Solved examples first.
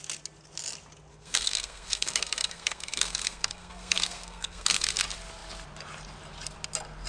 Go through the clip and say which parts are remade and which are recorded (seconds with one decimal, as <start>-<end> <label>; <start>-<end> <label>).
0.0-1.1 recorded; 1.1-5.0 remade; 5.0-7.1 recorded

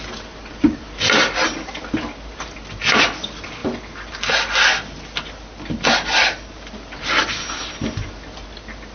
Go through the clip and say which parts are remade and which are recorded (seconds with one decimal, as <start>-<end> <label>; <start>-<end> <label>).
0.0-8.9 recorded

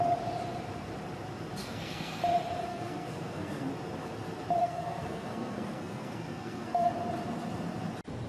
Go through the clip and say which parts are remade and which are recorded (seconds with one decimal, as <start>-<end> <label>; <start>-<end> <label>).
0.0-1.6 recorded; 1.6-2.2 remade; 2.2-2.7 recorded; 2.7-3.7 remade; 3.7-4.6 recorded; 4.6-6.9 remade; 6.9-8.3 recorded

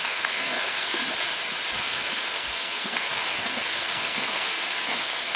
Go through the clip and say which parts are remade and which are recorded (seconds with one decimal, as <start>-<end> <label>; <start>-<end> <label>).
0.0-1.0 remade; 1.0-1.8 recorded; 1.8-5.4 remade

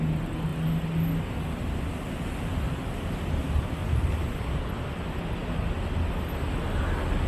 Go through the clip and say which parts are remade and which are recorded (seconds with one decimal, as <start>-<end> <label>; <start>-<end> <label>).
0.0-7.3 recorded

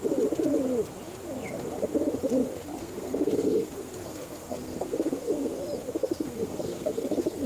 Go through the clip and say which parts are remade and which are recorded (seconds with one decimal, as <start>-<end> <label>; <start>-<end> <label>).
0.0-2.8 recorded; 2.8-5.6 remade; 5.6-6.0 recorded; 6.0-7.5 remade